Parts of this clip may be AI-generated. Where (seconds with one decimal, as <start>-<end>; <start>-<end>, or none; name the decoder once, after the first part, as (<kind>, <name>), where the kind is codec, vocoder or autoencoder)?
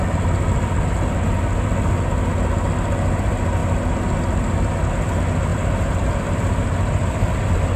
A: 5.5-7.8 (vocoder, BigVGAN v2)